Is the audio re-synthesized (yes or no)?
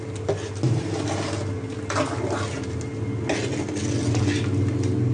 no